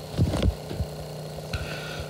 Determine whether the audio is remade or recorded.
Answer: remade